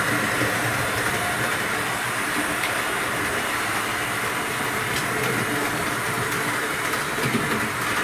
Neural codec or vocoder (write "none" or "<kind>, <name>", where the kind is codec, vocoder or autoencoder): none